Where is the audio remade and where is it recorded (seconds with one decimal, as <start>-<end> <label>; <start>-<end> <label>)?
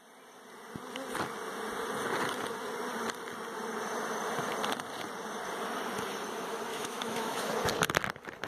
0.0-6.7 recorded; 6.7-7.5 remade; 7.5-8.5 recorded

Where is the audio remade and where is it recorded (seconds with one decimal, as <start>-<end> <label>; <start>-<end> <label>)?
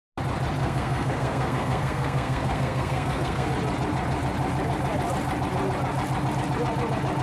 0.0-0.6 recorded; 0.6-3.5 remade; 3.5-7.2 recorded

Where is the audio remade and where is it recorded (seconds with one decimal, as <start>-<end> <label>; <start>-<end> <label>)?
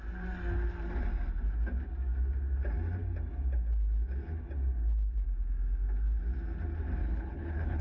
0.0-7.0 recorded; 7.0-7.8 remade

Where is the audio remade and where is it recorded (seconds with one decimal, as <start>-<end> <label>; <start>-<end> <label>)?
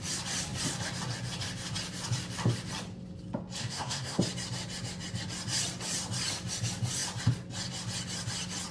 0.0-3.6 recorded; 3.6-4.2 remade; 4.2-8.7 recorded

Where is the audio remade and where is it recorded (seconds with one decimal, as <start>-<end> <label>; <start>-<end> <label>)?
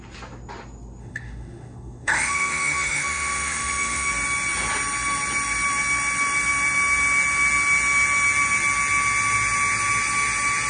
0.0-1.0 recorded; 1.0-4.1 remade; 4.1-10.7 recorded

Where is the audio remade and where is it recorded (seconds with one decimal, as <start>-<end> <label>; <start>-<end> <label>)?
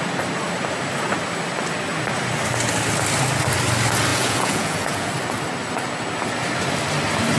0.0-4.1 recorded; 4.1-5.1 remade; 5.1-7.4 recorded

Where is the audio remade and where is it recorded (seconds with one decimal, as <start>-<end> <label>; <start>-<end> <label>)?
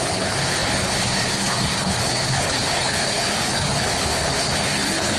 0.0-5.2 remade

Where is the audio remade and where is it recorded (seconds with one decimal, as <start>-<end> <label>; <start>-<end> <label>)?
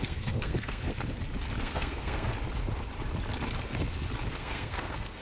0.0-0.9 remade; 0.9-1.6 recorded; 1.6-2.3 remade; 2.3-4.3 recorded; 4.3-5.2 remade